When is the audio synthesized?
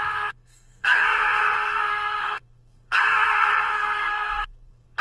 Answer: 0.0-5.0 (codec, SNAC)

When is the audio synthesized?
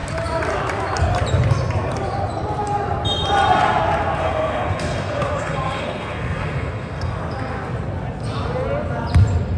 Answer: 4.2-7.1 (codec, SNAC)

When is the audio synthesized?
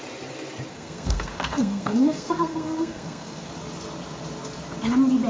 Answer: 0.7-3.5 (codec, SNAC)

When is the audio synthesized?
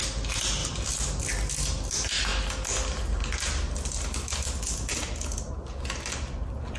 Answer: none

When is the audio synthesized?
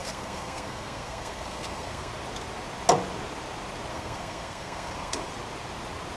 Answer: 0.0-2.1 (codec, SNAC); 3.9-5.3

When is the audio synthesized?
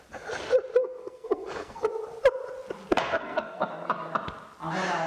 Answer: 0.8-1.9 (codec, SNAC); 3.0-3.7